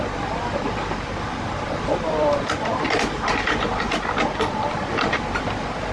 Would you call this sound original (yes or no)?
no